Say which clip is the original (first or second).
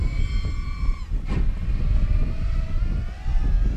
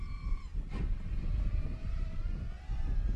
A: first